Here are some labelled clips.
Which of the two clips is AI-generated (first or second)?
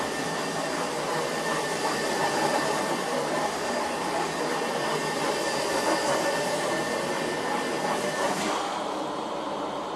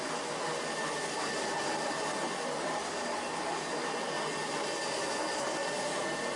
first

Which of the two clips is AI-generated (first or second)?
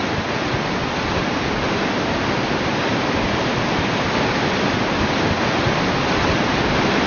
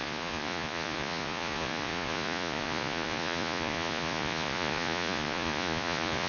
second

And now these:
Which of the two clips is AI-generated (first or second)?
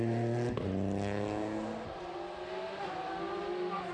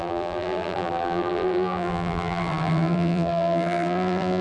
second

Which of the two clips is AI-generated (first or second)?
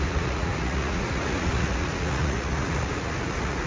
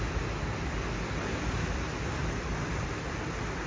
first